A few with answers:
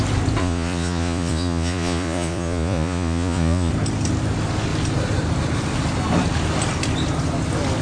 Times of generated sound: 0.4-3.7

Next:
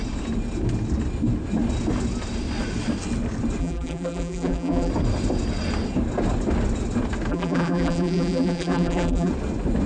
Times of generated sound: 3.6-4.9; 7.3-9.3

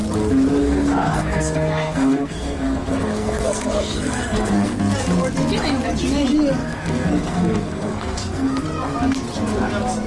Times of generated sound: 0.6-4.8; 6.6-8.6

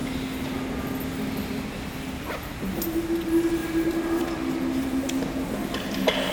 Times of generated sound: none